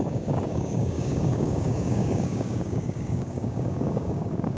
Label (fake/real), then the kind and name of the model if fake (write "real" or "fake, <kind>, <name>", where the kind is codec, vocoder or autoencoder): fake, codec, DAC